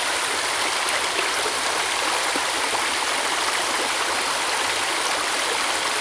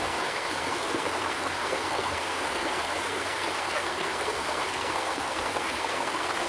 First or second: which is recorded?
first